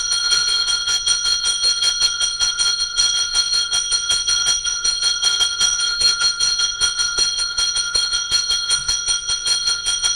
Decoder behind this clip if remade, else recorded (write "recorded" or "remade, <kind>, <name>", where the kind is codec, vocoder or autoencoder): remade, vocoder, Vocos